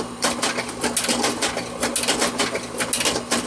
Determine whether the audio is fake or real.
real